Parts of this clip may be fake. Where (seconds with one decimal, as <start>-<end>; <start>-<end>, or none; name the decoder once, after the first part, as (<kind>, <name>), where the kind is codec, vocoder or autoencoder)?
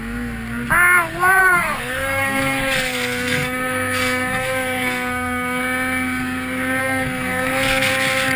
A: 1.4-5.6 (codec, SNAC); 6.8-7.9